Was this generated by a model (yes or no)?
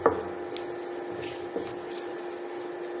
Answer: no